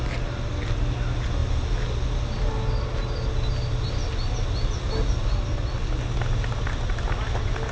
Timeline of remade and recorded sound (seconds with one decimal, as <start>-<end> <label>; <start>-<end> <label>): 0.0-7.7 recorded